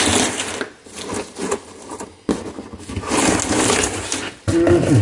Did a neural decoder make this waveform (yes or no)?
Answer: no